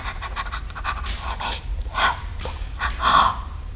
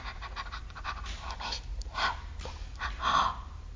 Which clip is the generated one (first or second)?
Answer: first